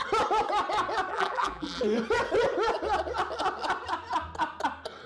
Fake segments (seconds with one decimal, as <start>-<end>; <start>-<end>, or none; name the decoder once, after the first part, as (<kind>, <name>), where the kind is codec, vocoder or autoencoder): 1.1-1.8 (vocoder, BigVGAN v2)